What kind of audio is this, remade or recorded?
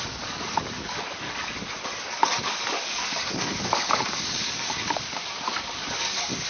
remade